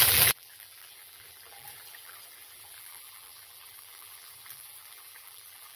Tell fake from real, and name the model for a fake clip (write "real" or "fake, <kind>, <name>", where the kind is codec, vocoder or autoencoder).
fake, vocoder, BigVGAN v2